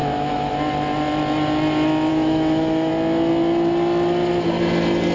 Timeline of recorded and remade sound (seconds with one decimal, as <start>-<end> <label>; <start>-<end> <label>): 0.0-0.5 remade; 0.5-2.1 recorded; 2.1-2.9 remade; 2.9-5.1 recorded